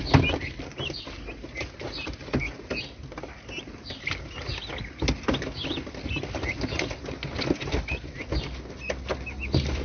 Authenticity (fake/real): real